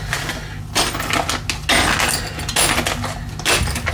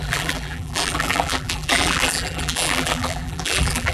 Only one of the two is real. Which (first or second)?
first